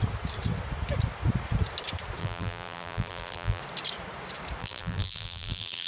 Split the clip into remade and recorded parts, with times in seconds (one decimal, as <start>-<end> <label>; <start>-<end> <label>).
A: 0.0-2.2 recorded; 2.2-3.6 remade; 3.6-4.6 recorded; 4.6-5.9 remade